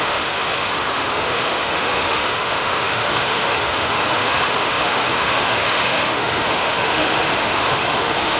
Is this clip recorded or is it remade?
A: remade